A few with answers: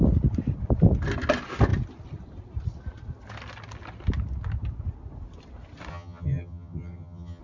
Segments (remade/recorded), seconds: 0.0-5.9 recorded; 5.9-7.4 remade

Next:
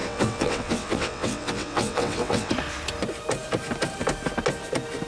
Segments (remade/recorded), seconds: 0.0-2.5 remade; 2.5-5.1 recorded

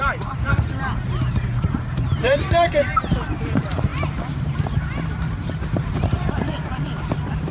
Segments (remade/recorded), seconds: 0.0-7.5 remade

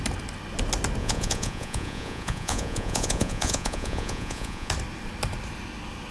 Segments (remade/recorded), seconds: 0.0-1.0 recorded; 1.0-4.7 remade; 4.7-6.1 recorded

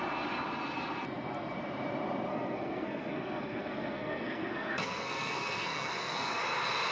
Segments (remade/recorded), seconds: 0.0-2.3 recorded; 2.3-6.4 remade; 6.4-6.9 recorded

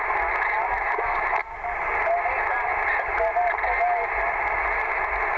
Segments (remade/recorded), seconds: 0.0-5.4 recorded

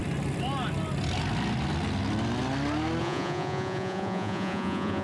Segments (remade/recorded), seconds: 0.0-3.0 recorded; 3.0-5.0 remade

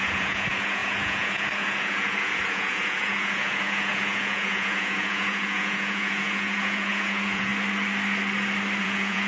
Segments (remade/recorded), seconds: 0.0-7.5 remade; 7.5-8.8 recorded; 8.8-9.3 remade